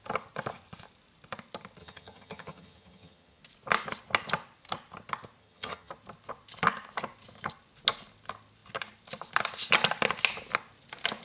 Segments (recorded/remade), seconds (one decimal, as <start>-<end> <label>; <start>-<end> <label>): 0.0-1.8 recorded; 1.8-3.4 remade; 3.4-5.4 recorded; 5.4-5.9 remade; 5.9-11.2 recorded